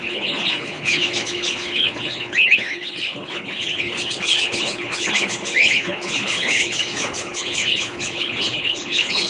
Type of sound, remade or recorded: remade